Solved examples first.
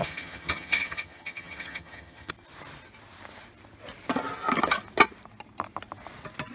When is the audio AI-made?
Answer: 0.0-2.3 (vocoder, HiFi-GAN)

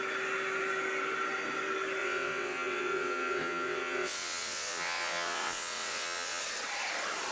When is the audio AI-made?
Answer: 2.0-6.4 (vocoder, WaveNeXt)

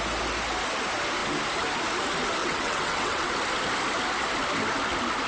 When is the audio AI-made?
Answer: 2.4-3.3 (vocoder, WaveNeXt)